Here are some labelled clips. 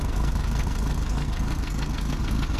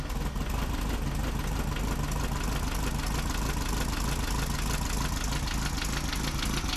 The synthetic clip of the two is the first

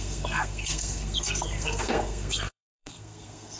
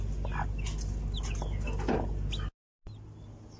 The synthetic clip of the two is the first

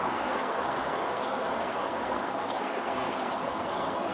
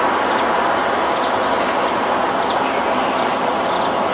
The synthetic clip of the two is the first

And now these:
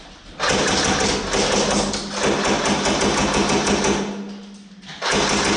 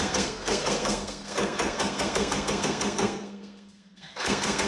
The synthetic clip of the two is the second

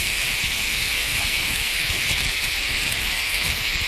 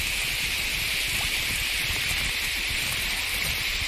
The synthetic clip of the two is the first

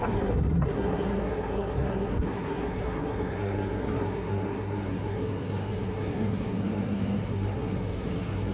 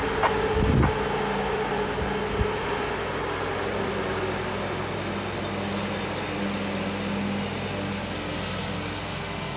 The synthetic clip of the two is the first